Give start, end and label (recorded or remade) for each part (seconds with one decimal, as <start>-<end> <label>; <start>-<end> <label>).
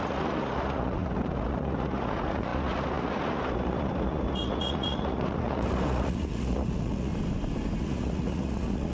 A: 0.0-7.1 remade; 7.1-7.8 recorded; 7.8-8.9 remade